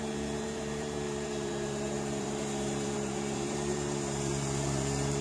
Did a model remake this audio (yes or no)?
yes